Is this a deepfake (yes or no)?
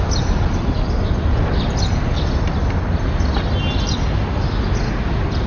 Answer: no